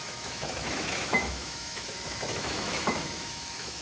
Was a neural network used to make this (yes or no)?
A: yes